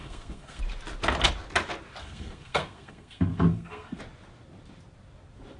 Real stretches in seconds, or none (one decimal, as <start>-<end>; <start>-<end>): 0.6-2.0; 4.0-5.6